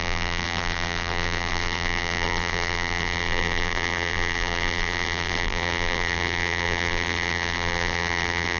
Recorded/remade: remade